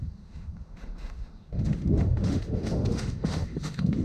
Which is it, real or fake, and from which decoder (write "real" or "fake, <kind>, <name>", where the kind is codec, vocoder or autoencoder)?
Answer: fake, autoencoder, DAC-VAE